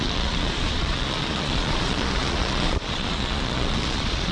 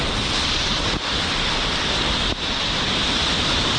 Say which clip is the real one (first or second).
second